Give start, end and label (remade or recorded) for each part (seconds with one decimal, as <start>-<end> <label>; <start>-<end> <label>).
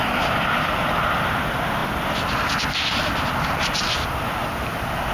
0.0-5.1 recorded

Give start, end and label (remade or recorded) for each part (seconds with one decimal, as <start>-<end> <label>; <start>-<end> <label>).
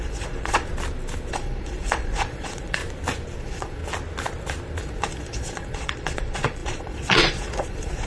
0.0-0.7 remade; 0.7-1.3 recorded; 1.3-2.8 remade; 2.8-3.4 recorded; 3.4-3.8 remade; 3.8-4.8 recorded; 4.8-8.1 remade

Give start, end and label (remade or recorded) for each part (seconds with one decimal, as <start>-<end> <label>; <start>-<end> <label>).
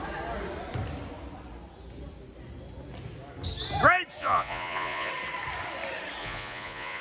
0.0-4.2 recorded; 4.2-5.1 remade; 5.1-6.2 recorded; 6.2-7.0 remade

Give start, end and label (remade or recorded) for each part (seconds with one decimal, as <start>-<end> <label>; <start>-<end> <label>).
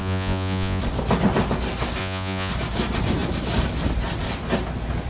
0.0-0.8 remade; 0.8-2.0 recorded; 2.0-2.5 remade; 2.5-5.1 recorded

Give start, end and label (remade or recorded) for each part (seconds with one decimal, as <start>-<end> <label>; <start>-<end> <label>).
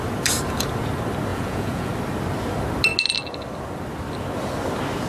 0.0-1.3 recorded; 1.3-1.9 remade; 1.9-5.1 recorded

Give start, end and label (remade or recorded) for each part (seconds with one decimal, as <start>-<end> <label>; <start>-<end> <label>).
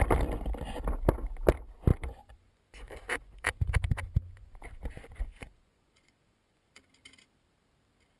0.0-1.9 recorded; 1.9-6.8 remade; 6.8-8.2 recorded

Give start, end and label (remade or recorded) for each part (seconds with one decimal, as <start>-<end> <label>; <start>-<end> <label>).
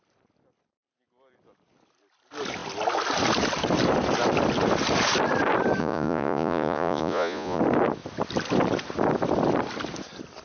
0.0-5.8 recorded; 5.8-7.6 remade; 7.6-10.4 recorded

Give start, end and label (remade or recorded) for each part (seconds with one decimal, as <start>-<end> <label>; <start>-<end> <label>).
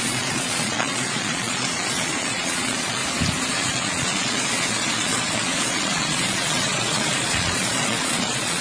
0.0-3.0 remade; 3.0-3.5 recorded; 3.5-8.6 remade